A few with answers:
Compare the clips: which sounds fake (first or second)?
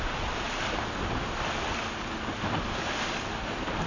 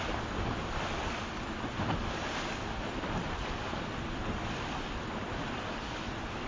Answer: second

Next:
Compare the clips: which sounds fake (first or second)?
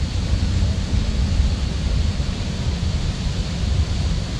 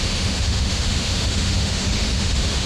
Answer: second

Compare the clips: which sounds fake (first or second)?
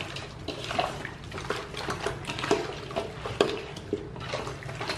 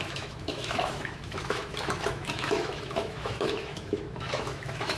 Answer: second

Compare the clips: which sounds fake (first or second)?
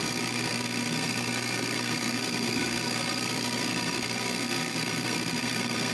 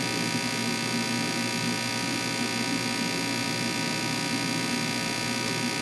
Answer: first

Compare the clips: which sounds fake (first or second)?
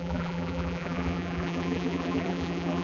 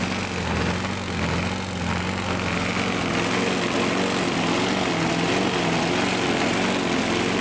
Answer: first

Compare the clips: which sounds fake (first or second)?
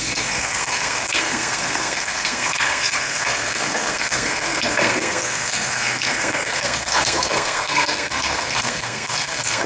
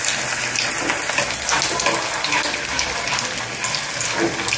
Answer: first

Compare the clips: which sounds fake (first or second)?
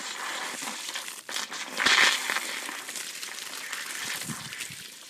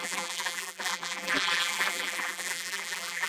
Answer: second